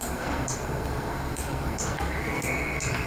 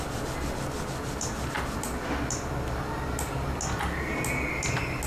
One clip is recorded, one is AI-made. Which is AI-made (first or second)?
first